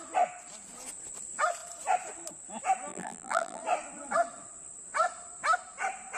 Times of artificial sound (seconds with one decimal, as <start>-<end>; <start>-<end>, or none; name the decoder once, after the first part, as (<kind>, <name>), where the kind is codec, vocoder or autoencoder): 2.9-3.6 (vocoder, BigVGAN v2)